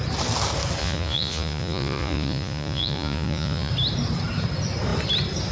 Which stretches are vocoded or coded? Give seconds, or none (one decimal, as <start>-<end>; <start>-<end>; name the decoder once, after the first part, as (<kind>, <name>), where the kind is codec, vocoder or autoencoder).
0.8-3.7 (vocoder, Vocos)